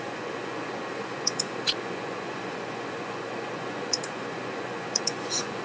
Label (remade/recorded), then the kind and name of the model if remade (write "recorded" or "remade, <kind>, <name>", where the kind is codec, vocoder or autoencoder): remade, vocoder, Vocos